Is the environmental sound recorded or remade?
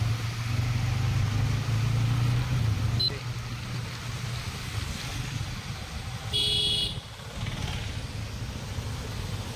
recorded